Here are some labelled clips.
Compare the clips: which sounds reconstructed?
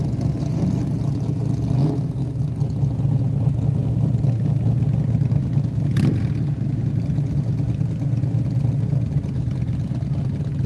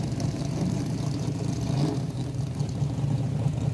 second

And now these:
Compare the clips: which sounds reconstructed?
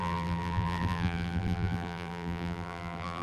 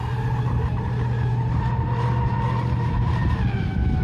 first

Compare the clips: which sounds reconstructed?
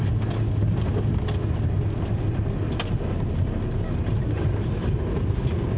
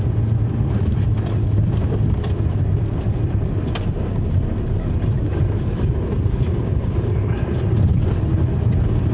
second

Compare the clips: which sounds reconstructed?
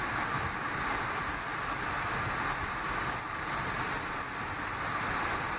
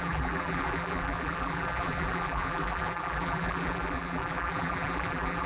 second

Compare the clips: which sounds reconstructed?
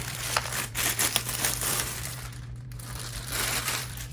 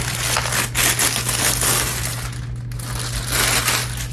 first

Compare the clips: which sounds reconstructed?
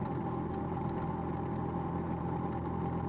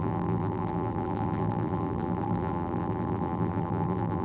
second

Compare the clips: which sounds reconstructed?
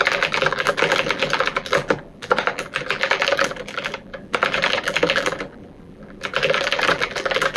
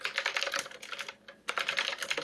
first